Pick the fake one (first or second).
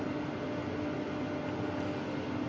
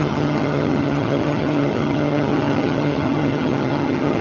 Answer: second